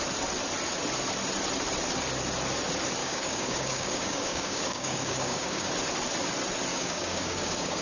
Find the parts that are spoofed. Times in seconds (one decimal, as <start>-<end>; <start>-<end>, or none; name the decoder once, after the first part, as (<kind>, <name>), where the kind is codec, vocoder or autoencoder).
3.0-5.7 (codec, DAC); 6.7-7.8